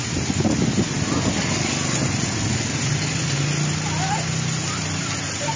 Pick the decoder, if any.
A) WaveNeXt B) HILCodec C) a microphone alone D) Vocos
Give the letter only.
C